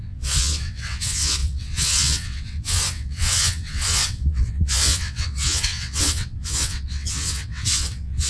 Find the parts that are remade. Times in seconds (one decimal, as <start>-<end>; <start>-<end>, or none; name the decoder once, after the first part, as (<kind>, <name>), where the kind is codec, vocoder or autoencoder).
0.0-8.3 (vocoder, WaveNeXt)

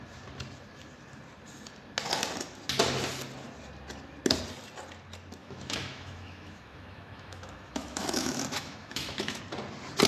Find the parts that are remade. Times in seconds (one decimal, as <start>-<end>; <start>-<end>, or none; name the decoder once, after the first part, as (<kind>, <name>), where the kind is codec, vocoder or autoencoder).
5.4-9.4 (autoencoder, DAC-VAE)

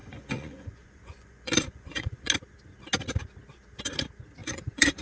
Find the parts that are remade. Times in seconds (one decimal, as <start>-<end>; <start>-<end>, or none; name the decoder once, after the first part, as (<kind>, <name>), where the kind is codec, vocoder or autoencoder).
0.0-2.3 (vocoder, Vocos); 4.4-5.0

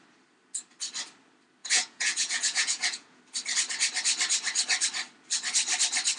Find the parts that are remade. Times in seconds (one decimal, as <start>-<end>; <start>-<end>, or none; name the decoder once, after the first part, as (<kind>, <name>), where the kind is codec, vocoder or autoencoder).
1.6-3.2 (vocoder, Vocos)

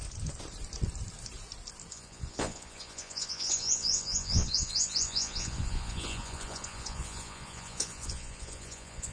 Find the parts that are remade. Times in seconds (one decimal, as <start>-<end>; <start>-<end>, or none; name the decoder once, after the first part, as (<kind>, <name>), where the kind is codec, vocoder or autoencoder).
1.9-9.1 (vocoder, Vocos)

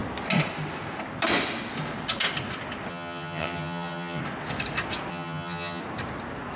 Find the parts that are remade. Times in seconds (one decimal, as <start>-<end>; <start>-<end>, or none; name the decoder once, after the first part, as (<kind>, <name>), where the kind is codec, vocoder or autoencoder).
2.9-4.2 (vocoder, HiFi-GAN); 5.1-5.8

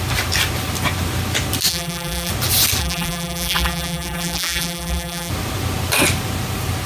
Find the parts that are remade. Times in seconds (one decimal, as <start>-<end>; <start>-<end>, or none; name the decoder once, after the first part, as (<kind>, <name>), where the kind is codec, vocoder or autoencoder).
1.7-2.3 (vocoder, BigVGAN v2); 2.8-5.3

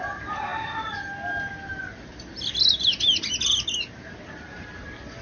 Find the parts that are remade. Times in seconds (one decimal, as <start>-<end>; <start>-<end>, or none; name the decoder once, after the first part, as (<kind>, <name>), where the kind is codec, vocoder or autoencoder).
none